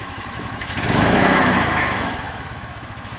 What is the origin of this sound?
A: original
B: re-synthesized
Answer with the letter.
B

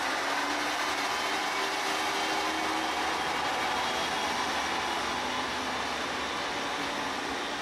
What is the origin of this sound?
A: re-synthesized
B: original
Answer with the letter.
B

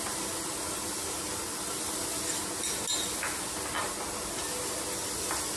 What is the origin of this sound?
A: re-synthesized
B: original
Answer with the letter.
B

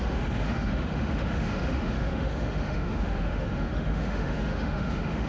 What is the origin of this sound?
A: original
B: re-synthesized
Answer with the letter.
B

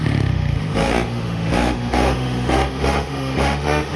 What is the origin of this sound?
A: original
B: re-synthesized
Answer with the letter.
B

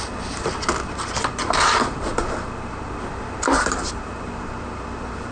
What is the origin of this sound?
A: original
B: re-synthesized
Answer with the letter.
A